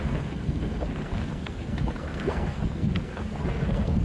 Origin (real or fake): fake